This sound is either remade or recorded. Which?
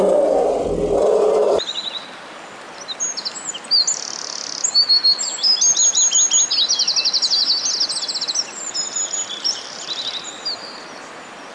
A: recorded